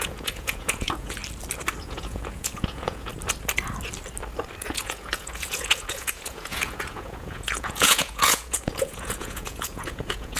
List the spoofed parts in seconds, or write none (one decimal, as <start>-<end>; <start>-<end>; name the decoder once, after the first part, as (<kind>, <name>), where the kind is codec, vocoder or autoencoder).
0.0-1.2 (vocoder, Vocos); 1.8-3.1; 4.6-10.4